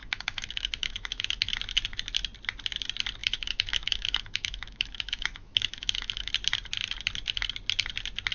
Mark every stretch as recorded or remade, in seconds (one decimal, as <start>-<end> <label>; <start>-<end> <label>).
0.0-1.5 remade; 1.5-3.2 recorded; 3.2-6.3 remade; 6.3-8.3 recorded